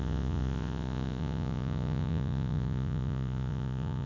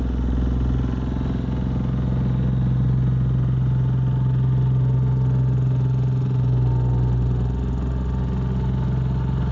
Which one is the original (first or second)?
second